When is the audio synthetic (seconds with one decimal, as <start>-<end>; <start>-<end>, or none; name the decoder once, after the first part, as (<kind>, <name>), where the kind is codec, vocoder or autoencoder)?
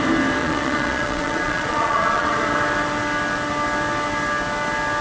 0.4-2.3 (vocoder, Vocos)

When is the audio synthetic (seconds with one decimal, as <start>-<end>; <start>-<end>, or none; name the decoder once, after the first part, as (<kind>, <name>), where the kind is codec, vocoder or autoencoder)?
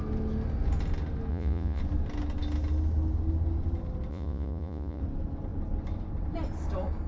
1.3-1.8 (vocoder, Vocos); 4.1-5.0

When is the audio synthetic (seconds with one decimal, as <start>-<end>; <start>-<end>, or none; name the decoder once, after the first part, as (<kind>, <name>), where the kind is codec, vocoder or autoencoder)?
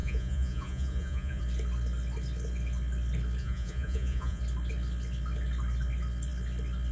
0.0-1.4 (vocoder, Vocos); 3.4-4.4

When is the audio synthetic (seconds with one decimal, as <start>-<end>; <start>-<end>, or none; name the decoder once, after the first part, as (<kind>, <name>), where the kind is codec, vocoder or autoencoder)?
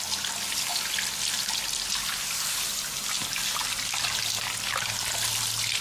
none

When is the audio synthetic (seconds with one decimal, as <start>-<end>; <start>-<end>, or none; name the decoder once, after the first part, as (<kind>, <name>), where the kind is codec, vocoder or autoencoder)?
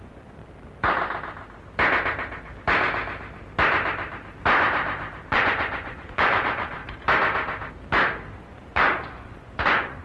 0.0-0.4 (vocoder, Vocos); 5.3-6.8; 8.4-10.0